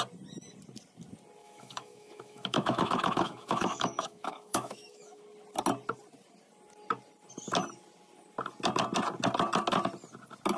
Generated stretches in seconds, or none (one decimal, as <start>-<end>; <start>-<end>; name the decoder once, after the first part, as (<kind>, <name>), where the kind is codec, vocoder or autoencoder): 1.4-5.2 (autoencoder, DAC-VAE)